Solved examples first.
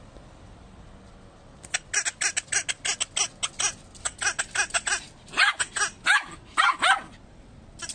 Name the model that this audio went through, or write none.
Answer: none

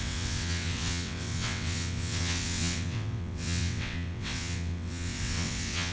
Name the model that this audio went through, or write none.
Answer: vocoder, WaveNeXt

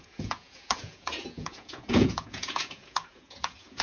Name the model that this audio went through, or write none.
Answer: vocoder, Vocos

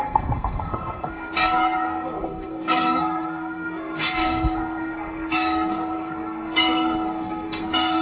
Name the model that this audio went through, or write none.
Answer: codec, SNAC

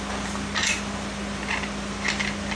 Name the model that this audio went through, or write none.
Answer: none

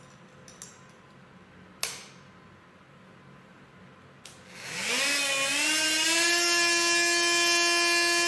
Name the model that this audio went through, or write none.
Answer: none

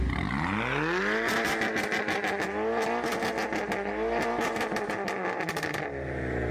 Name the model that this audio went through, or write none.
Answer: none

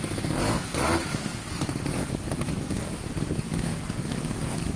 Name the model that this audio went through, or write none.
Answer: codec, DAC